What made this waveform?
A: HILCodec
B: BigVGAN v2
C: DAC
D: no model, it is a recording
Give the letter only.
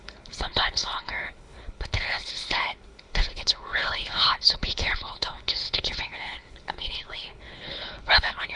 A